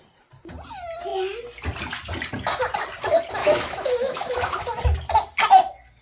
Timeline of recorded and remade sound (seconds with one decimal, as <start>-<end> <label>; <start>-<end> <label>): 0.0-3.4 recorded; 3.4-4.6 remade; 4.6-6.0 recorded

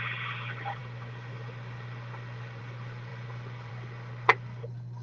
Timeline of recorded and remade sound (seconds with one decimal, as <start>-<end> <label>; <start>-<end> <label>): 0.0-5.0 recorded

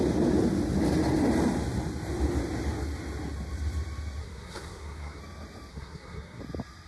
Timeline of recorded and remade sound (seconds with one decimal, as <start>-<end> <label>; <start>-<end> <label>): 0.0-4.2 recorded; 4.2-5.2 remade; 5.2-5.7 recorded; 5.7-6.4 remade; 6.4-6.9 recorded

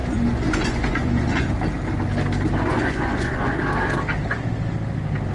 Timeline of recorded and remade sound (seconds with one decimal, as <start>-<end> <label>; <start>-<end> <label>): 0.0-1.5 remade; 1.5-2.7 recorded; 2.7-3.6 remade; 3.6-5.3 recorded

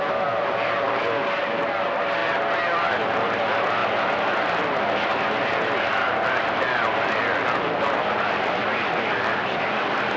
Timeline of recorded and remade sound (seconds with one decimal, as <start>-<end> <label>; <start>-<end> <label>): 0.0-10.2 recorded